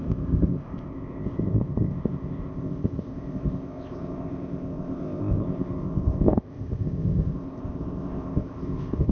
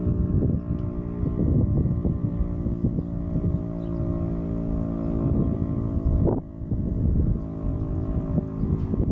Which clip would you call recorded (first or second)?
second